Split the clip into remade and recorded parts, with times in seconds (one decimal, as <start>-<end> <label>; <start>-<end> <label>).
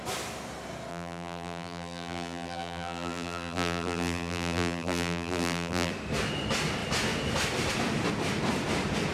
0.0-0.9 recorded; 0.9-5.9 remade; 5.9-9.1 recorded